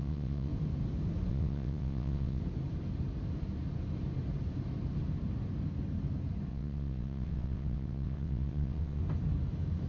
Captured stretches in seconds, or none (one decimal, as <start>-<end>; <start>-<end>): 0.5-1.3; 2.4-6.5; 9.0-9.9